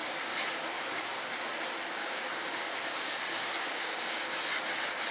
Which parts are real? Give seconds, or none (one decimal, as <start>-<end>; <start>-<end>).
0.0-2.0; 4.4-5.1